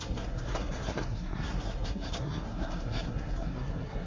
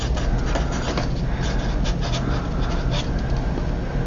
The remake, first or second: first